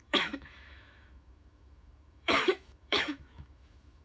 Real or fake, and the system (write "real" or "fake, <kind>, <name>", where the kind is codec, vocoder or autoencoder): fake, autoencoder, DAC-VAE